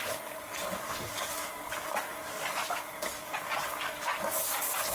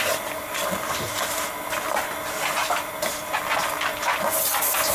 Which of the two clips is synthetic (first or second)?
first